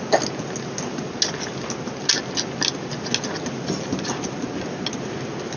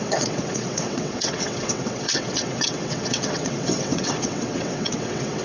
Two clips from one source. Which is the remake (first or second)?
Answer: second